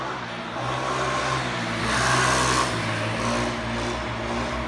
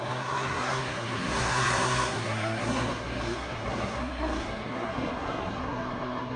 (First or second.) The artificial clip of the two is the second